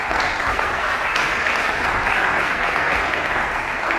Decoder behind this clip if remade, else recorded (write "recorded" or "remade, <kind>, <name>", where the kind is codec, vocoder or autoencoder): remade, codec, SNAC